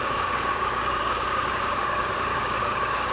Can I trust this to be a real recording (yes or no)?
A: no